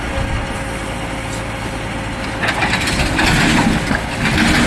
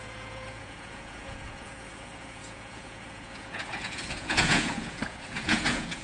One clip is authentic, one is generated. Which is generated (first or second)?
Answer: second